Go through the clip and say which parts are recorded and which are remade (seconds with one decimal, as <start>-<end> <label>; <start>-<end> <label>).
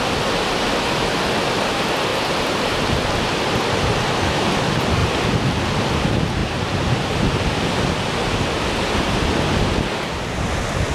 0.0-2.1 recorded; 2.1-3.0 remade; 3.0-6.4 recorded; 6.4-7.8 remade; 7.8-10.9 recorded